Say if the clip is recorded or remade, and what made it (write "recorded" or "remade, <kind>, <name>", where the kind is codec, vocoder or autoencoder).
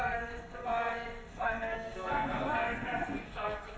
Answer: remade, codec, SNAC